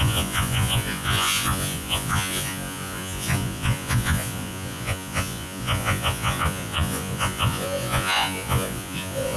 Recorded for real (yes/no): no